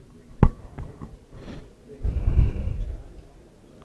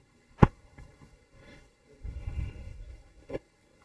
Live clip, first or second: first